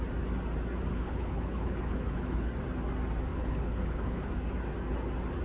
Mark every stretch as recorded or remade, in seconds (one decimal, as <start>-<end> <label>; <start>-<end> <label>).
0.0-0.9 recorded; 0.9-2.5 remade; 2.5-3.3 recorded; 3.3-4.3 remade; 4.3-5.4 recorded